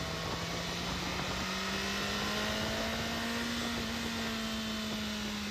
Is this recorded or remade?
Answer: recorded